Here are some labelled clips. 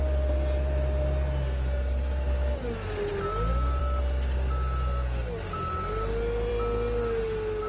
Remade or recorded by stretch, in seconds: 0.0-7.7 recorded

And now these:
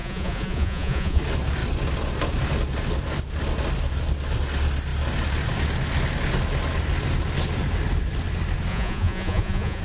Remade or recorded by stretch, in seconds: 0.0-1.2 remade; 1.2-8.7 recorded; 8.7-9.8 remade

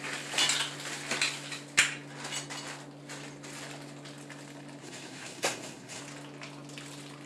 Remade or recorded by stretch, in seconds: 0.0-4.8 recorded; 4.8-6.0 remade; 6.0-7.3 recorded

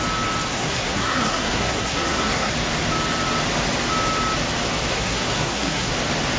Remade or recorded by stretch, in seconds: 0.0-0.5 recorded; 0.5-2.5 remade; 2.5-4.9 recorded; 4.9-5.9 remade; 5.9-6.4 recorded

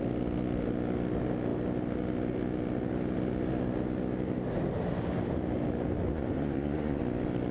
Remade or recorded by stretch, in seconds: 0.0-6.1 recorded; 6.1-7.0 remade; 7.0-7.5 recorded

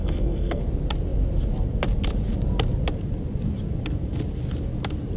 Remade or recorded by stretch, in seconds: 0.0-0.6 remade; 0.6-5.2 recorded

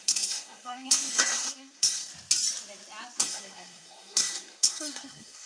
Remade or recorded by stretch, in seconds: 0.0-2.1 remade; 2.1-3.2 recorded; 3.2-5.5 remade